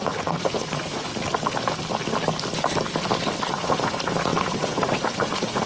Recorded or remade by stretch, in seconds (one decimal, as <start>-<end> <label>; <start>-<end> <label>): 0.0-1.1 remade; 1.1-3.5 recorded; 3.5-5.7 remade